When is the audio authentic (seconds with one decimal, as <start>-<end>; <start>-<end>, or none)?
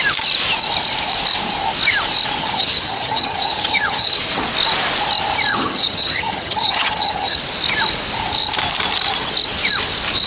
0.0-2.4; 4.2-5.5; 7.4-10.3